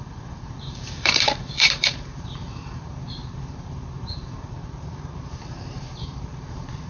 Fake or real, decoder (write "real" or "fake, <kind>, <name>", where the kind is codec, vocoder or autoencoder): fake, vocoder, BigVGAN v2